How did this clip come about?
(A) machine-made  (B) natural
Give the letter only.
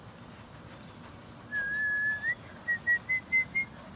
B